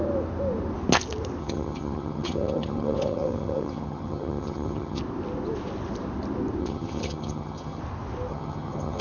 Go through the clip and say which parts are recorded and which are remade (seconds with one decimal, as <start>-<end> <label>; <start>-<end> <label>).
0.0-1.4 recorded; 1.4-5.0 remade; 5.0-6.6 recorded; 6.6-7.8 remade; 7.8-8.3 recorded; 8.3-9.0 remade